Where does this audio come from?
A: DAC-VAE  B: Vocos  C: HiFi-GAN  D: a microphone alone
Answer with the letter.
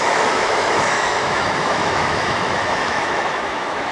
A